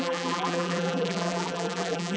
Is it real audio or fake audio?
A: fake